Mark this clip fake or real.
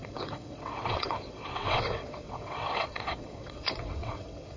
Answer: fake